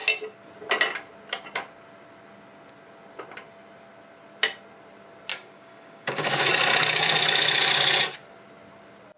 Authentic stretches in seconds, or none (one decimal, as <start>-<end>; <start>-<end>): 0.0-5.3; 6.5-9.2